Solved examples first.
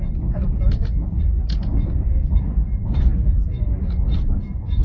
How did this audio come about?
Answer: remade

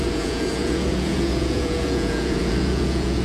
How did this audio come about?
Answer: remade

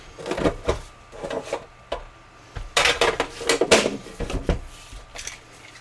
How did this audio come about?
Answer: recorded